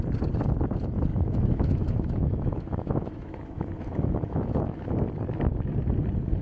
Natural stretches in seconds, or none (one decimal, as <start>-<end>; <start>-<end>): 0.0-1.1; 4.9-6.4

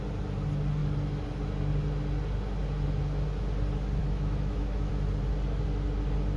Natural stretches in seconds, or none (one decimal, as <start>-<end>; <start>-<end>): 0.0-4.0; 4.9-6.4

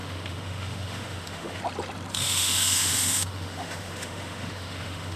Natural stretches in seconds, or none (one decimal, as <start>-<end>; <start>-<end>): 1.6-2.1